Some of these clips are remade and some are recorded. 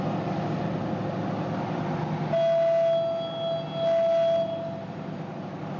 recorded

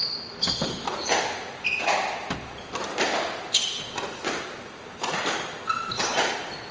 recorded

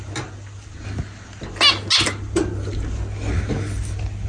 recorded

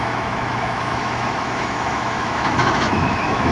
remade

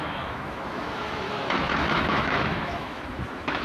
remade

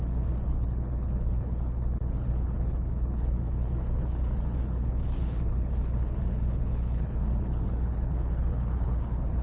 remade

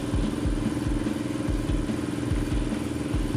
recorded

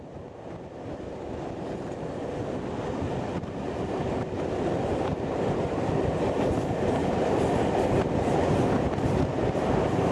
recorded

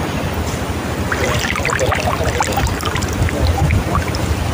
recorded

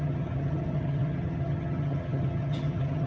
remade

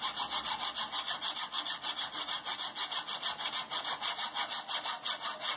recorded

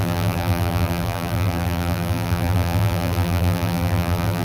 remade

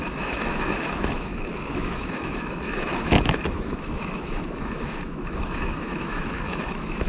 remade